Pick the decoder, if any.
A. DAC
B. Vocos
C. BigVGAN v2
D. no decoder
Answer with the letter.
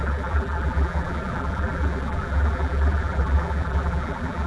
C